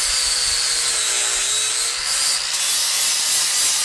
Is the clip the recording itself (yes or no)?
yes